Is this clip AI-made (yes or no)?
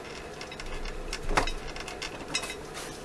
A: no